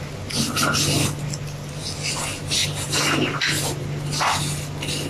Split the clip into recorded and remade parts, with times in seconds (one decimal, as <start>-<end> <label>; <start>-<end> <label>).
0.0-5.1 recorded